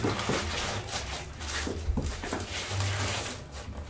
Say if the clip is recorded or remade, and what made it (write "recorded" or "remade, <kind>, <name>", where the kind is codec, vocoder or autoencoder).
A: recorded